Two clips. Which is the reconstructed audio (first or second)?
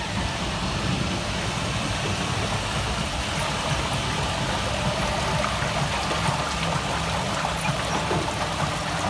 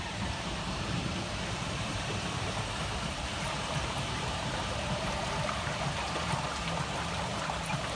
second